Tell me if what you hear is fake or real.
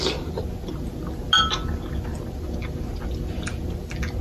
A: real